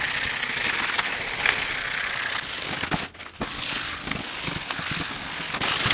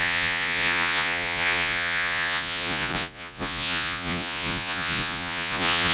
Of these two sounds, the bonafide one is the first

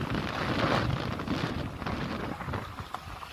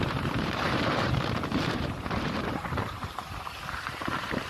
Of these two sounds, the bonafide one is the first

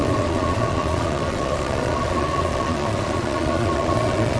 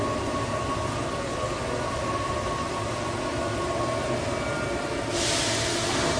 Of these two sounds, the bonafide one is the second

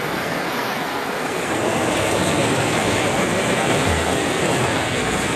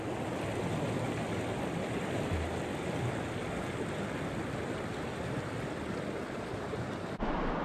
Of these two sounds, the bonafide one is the second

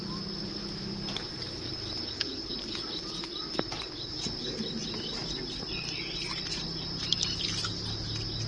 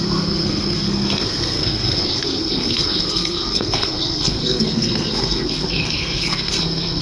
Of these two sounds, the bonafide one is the first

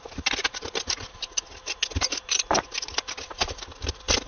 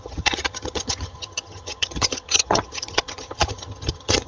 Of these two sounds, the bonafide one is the first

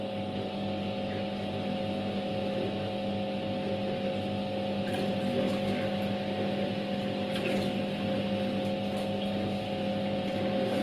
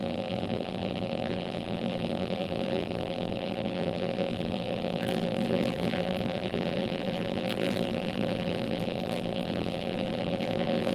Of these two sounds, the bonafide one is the first